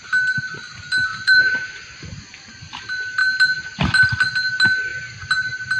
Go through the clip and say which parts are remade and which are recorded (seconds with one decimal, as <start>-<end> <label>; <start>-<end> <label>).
0.0-1.1 recorded; 1.1-1.7 remade; 1.7-5.8 recorded